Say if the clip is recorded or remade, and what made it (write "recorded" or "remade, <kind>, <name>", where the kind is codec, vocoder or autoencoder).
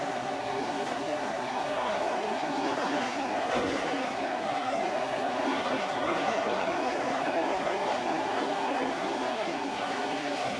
remade, codec, SNAC